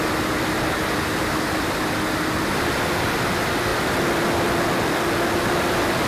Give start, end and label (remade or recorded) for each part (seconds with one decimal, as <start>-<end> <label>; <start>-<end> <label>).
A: 0.0-6.1 recorded